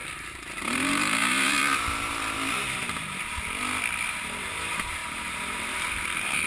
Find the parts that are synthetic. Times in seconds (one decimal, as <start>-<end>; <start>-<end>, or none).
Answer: 0.0-1.6; 4.1-6.5